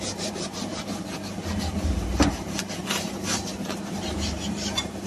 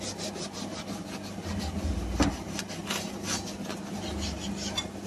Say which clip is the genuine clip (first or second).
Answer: second